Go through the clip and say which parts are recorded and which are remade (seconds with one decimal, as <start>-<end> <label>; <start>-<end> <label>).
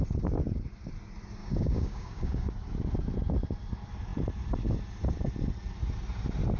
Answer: 0.0-1.4 recorded; 1.4-2.5 remade; 2.5-6.6 recorded